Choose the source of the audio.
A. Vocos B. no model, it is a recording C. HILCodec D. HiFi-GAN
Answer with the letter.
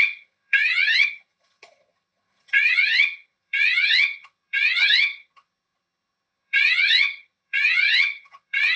D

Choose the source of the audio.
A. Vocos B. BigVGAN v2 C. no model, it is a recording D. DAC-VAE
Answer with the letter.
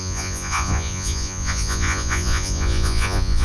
A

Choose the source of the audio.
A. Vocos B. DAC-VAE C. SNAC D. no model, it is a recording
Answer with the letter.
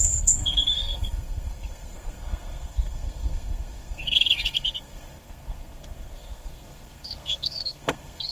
C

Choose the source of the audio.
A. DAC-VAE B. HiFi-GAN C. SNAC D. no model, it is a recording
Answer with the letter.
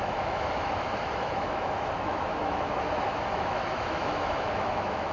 A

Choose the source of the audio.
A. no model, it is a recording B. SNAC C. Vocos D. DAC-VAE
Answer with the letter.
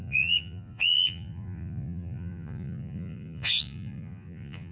C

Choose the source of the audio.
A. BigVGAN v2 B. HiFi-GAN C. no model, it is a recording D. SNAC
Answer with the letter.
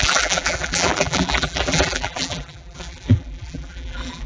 A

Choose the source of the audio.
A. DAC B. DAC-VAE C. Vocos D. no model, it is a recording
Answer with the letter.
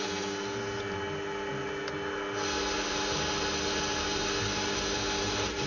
D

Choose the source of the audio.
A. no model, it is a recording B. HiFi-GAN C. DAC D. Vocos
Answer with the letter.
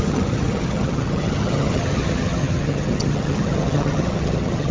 B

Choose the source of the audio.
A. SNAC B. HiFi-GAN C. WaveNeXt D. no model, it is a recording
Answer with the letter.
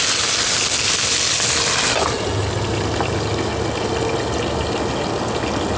D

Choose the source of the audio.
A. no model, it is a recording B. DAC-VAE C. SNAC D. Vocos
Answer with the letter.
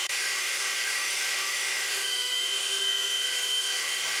B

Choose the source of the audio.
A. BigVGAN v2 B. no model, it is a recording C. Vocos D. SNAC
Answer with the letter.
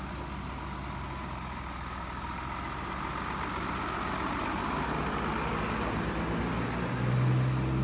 B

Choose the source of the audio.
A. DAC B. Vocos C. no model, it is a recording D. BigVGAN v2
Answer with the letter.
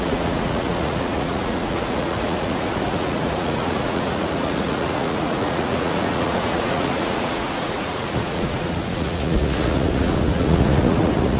B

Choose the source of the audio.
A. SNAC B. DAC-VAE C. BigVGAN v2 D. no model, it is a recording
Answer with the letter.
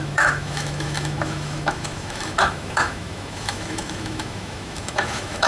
B